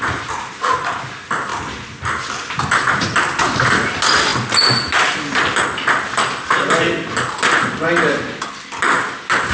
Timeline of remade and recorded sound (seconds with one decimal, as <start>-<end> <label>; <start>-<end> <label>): 0.0-9.5 recorded